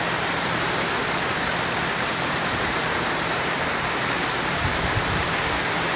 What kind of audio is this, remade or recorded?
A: remade